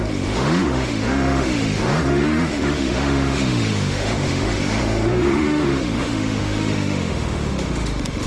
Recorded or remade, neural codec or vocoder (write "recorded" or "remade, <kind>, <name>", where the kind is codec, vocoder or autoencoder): remade, autoencoder, DAC-VAE